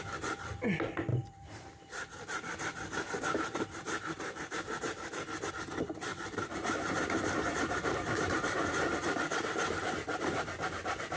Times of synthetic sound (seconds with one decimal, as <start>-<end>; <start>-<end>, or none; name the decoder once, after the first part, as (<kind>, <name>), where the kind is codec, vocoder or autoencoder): 1.1-5.5 (vocoder, BigVGAN v2); 6.1-8.3